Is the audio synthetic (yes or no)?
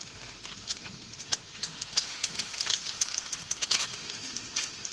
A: yes